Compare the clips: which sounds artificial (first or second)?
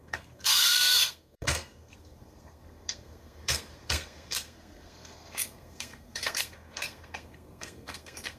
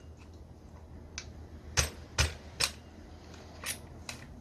first